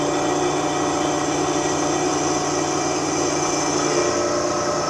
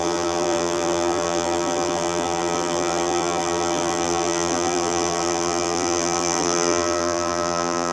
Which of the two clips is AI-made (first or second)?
second